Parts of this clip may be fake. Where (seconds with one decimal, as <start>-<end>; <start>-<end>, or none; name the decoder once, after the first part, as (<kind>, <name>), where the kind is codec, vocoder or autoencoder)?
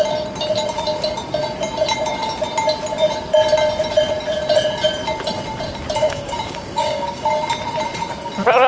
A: 6.0-7.3 (codec, DAC)